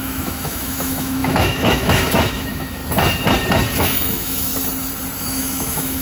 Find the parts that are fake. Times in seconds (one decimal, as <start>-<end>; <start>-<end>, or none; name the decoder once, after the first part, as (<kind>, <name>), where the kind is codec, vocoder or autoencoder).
0.0-2.8 (autoencoder, DAC-VAE); 3.8-4.5; 5.2-6.0